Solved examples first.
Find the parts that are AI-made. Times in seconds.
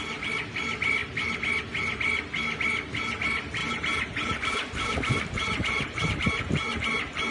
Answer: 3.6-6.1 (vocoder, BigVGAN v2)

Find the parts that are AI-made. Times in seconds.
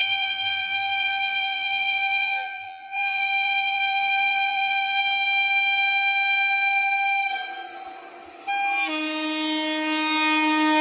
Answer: 0.0-5.0 (vocoder, BigVGAN v2)